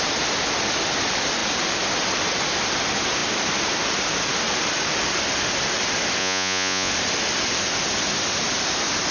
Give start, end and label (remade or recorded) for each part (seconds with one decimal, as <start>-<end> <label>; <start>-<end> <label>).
0.0-6.2 recorded; 6.2-6.9 remade; 6.9-9.1 recorded